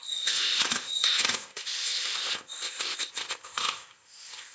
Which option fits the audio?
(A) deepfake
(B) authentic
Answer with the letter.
A